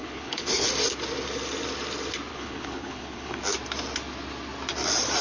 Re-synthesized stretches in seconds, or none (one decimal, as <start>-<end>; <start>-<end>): 0.0-0.7; 2.3-3.4